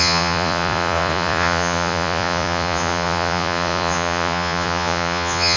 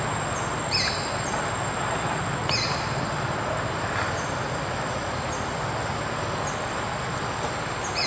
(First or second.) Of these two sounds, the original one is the second